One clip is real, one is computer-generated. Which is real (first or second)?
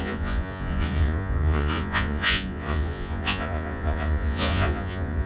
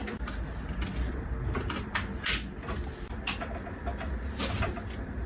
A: second